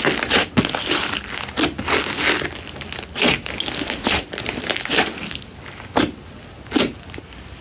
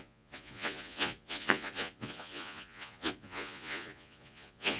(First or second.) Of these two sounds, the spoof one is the second